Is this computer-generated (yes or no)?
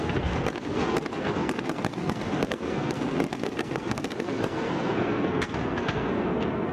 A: yes